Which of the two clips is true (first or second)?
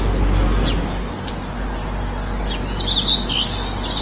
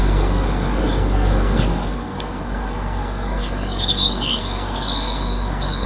first